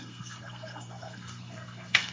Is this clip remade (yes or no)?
yes